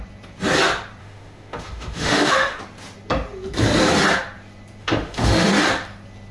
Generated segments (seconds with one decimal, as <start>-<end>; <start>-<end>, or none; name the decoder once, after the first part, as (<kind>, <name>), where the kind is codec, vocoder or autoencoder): 1.0-2.6 (autoencoder, DAC-VAE); 4.8-5.5

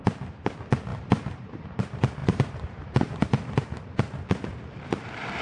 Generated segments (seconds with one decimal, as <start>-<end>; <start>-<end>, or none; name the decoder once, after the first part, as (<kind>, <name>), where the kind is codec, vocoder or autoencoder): 0.9-1.8 (vocoder, BigVGAN v2); 2.2-5.4

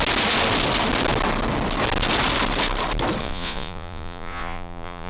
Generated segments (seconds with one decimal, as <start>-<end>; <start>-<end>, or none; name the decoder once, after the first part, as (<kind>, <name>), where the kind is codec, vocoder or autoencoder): 3.2-5.1 (vocoder, Vocos)

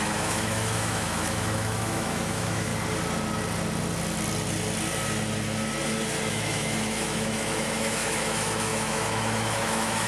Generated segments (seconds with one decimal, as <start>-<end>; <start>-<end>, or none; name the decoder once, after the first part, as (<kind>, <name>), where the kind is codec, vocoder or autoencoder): 0.0-2.7 (autoencoder, DAC-VAE); 6.3-10.1